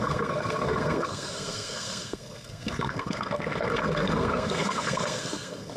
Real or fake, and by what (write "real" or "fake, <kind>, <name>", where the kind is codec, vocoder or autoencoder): fake, codec, SNAC